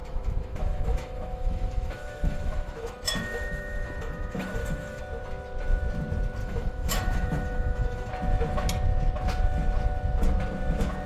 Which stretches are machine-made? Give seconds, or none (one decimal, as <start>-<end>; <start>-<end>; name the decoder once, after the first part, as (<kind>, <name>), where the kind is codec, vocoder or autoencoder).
0.0-5.0 (autoencoder, DAC-VAE); 6.4-8.1